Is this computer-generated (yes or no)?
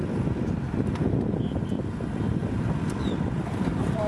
yes